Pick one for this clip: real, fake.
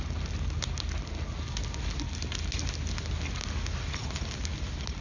real